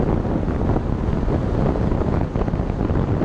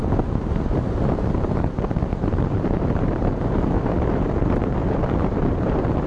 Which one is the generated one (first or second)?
second